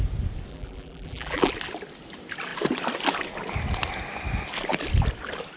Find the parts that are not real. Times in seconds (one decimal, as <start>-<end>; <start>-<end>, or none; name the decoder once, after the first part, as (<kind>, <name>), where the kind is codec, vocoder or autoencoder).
0.5-1.5 (vocoder, BigVGAN v2)